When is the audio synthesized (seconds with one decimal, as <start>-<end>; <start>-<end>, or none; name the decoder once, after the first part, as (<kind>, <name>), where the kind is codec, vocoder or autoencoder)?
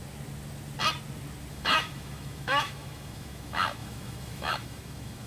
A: 1.5-5.3 (autoencoder, DAC-VAE)